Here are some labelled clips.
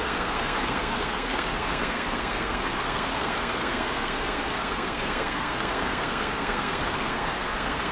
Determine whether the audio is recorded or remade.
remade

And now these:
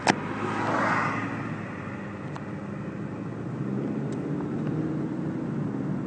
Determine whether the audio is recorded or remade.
recorded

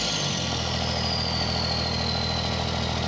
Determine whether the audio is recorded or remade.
recorded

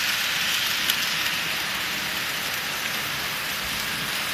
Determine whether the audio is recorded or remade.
recorded